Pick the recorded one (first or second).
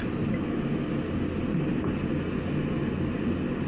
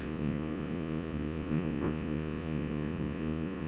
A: first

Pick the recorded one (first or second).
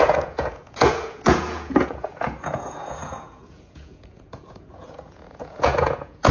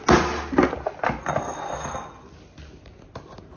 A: second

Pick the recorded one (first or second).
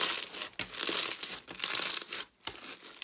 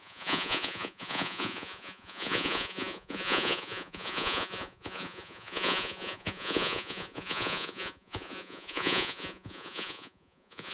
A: first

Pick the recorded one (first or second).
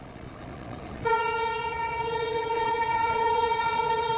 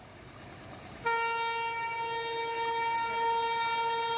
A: second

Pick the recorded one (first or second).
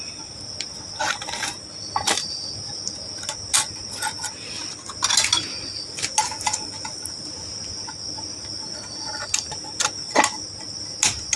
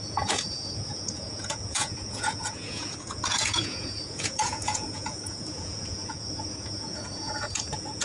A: first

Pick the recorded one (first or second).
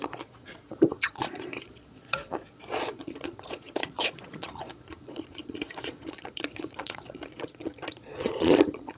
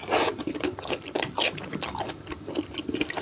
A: second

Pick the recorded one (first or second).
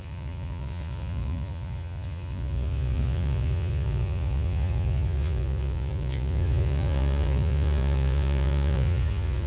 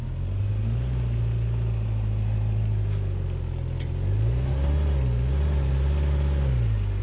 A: second